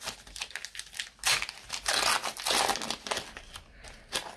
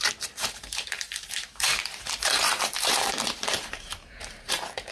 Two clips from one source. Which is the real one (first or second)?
first